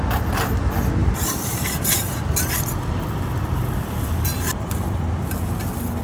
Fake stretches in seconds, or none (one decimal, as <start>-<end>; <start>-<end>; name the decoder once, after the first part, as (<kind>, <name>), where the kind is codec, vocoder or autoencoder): 1.0-4.6 (vocoder, BigVGAN v2)